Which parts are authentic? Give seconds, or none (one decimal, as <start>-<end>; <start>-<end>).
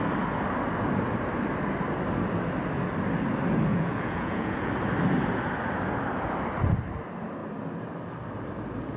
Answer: 0.0-3.7; 4.7-9.0